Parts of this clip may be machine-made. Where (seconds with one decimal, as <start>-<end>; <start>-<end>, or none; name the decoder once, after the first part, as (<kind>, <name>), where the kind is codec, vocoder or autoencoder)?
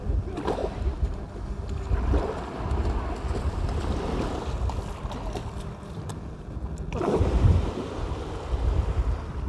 none